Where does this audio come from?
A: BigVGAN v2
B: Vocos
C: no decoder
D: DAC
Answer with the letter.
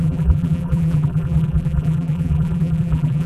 A